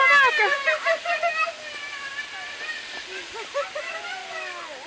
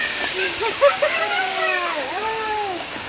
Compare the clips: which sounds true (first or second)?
first